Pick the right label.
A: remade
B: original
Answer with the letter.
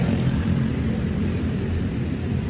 A